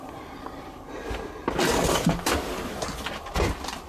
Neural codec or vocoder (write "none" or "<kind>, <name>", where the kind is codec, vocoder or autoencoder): vocoder, BigVGAN v2